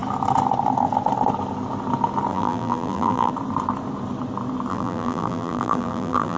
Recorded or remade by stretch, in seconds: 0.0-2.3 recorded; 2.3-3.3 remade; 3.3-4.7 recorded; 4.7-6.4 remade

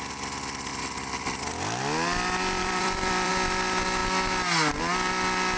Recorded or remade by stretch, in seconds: 0.0-0.7 recorded; 0.7-1.4 remade; 1.4-2.6 recorded; 2.6-3.3 remade; 3.3-5.6 recorded

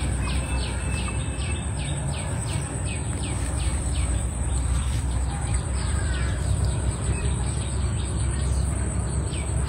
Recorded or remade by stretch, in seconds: 0.0-1.2 recorded; 1.2-1.8 remade; 1.8-3.7 recorded; 3.7-7.6 remade; 7.6-9.7 recorded